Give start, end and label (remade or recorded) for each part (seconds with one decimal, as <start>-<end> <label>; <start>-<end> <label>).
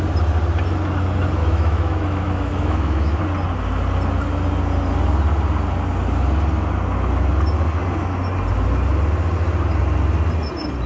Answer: 0.0-1.4 recorded; 1.4-3.2 remade; 3.2-10.9 recorded